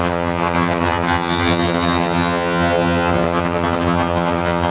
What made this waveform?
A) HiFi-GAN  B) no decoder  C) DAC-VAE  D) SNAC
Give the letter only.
A